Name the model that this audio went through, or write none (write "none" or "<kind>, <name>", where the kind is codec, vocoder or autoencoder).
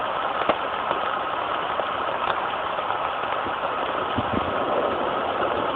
none